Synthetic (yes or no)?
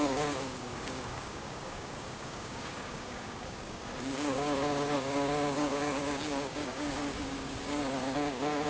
yes